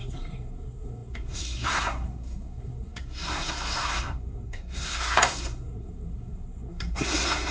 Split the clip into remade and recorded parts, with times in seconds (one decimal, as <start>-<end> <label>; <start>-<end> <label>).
0.0-7.5 remade